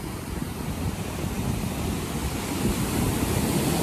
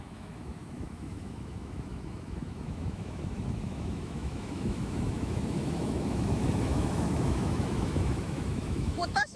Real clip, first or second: first